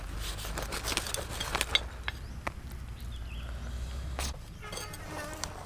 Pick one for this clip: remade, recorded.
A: recorded